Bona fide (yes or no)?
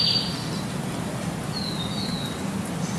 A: yes